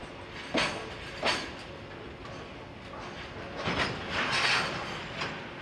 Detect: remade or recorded recorded